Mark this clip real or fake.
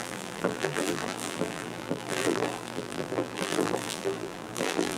fake